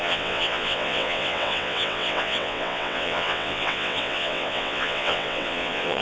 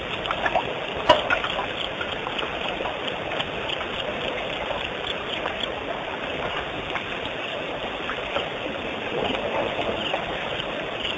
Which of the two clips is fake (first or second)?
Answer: first